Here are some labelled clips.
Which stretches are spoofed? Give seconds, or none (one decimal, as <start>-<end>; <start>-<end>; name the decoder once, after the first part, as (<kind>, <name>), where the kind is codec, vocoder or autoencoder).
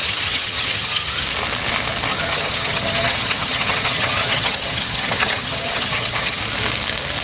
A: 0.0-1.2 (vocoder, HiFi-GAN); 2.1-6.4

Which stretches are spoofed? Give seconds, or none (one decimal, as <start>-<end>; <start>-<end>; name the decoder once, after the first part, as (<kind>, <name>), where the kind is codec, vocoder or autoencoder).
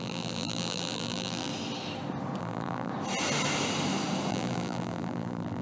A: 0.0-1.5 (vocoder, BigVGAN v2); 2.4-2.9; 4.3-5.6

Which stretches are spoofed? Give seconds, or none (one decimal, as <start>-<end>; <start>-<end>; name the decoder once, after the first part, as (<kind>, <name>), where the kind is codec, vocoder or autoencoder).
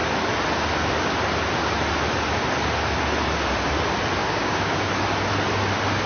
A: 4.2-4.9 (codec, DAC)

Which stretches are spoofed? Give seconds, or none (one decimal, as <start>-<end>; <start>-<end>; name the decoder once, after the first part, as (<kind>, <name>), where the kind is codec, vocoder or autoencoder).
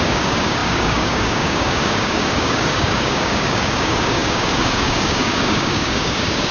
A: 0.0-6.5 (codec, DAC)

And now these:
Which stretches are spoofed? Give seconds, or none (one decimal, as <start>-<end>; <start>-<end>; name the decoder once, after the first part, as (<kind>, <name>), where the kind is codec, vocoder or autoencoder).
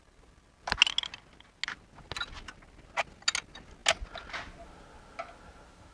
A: none